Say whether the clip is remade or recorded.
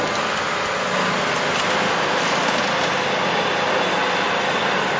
recorded